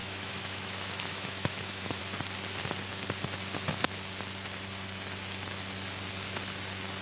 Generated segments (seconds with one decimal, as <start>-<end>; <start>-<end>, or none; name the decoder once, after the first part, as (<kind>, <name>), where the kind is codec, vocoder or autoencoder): 0.0-2.0 (autoencoder, DAC-VAE)